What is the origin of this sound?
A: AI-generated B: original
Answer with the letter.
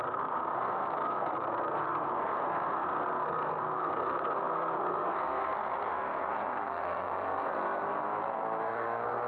A